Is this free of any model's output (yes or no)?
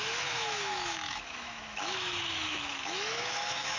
no